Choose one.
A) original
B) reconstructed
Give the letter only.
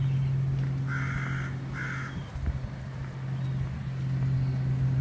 A